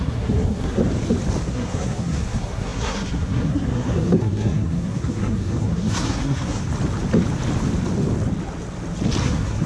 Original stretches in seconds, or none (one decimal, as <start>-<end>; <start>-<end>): 0.8-1.5; 6.6-9.2

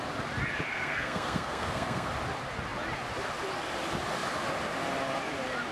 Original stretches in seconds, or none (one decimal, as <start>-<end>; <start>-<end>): 0.0-0.7; 2.1-5.7